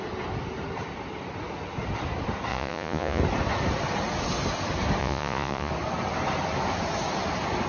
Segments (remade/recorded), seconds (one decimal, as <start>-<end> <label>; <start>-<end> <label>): 0.0-2.5 recorded; 2.5-3.2 remade; 3.2-5.0 recorded; 5.0-5.7 remade; 5.7-7.7 recorded